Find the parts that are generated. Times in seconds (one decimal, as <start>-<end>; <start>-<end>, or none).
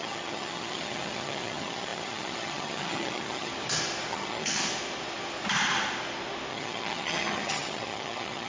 0.0-3.5; 4.1-4.6; 6.5-8.5